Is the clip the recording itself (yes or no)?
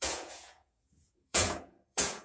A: no